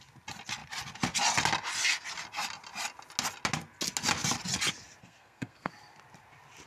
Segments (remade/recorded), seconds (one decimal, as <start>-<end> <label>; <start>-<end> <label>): 0.0-5.0 recorded; 5.0-5.7 remade; 5.7-6.7 recorded